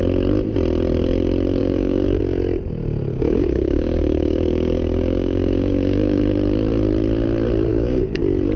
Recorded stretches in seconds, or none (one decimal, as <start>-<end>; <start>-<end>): 0.0-1.6; 2.2-3.1; 6.2-7.7; 8.2-8.6